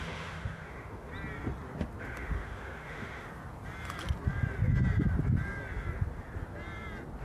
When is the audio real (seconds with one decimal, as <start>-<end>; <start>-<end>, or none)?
1.1-2.0; 3.3-7.2